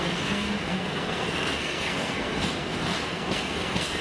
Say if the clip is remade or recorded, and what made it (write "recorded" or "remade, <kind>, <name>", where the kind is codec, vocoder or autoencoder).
remade, codec, SNAC